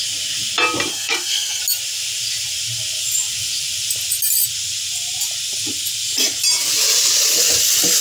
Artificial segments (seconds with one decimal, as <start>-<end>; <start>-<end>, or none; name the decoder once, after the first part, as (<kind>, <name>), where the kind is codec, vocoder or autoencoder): 0.9-1.6 (codec, SNAC)